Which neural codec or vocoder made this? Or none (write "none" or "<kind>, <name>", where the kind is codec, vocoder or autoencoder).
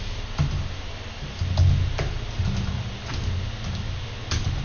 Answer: none